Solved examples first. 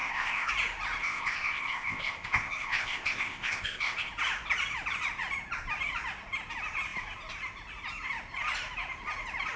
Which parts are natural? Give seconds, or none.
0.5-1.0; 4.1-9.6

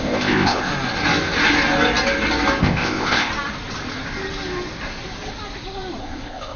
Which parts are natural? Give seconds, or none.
0.7-2.6; 3.3-6.0